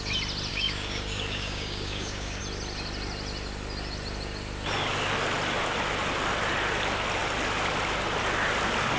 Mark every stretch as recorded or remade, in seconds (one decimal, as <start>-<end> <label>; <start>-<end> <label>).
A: 0.0-0.5 recorded; 0.5-2.4 remade; 2.4-9.0 recorded